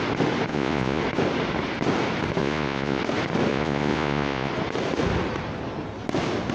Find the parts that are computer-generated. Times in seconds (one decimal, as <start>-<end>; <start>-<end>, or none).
0.5-1.0; 2.4-3.0; 3.5-4.5